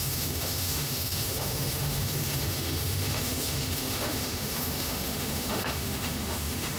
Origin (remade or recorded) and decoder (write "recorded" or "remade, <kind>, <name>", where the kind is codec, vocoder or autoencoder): remade, autoencoder, DAC-VAE